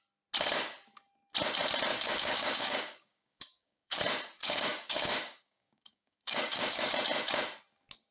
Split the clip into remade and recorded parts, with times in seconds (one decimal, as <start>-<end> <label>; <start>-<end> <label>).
0.0-1.9 recorded; 1.9-4.0 remade; 4.0-4.4 recorded; 4.4-6.9 remade; 6.9-8.1 recorded